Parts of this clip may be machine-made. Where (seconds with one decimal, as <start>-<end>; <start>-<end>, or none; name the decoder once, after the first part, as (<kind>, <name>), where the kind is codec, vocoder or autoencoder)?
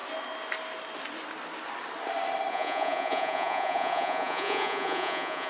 2.5-5.5 (vocoder, Vocos)